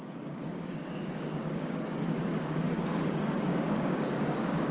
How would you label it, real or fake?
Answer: fake